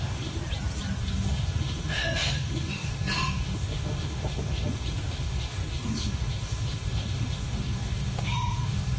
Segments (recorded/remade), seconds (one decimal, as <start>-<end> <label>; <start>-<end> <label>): 0.0-0.4 remade; 0.4-1.0 recorded; 1.0-9.0 remade